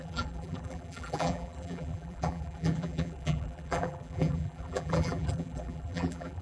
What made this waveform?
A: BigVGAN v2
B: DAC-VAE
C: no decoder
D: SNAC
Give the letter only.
A